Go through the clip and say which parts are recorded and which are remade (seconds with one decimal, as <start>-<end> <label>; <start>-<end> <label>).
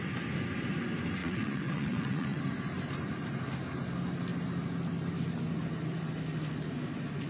0.0-1.2 recorded; 1.2-2.4 remade; 2.4-7.3 recorded